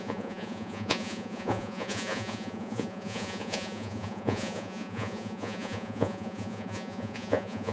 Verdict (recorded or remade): remade